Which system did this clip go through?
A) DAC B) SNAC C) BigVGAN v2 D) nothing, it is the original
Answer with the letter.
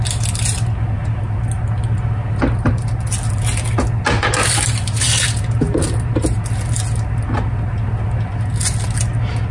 D